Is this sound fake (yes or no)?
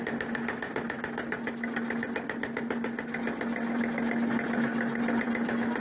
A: no